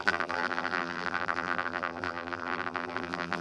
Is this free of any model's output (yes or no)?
no